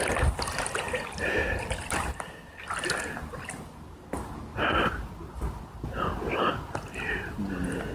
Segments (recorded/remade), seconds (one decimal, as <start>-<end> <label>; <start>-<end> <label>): 0.0-7.9 recorded